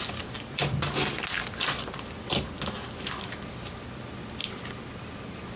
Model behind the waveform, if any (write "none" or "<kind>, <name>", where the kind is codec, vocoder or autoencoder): none